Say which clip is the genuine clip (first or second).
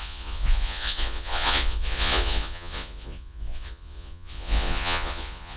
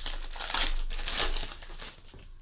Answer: second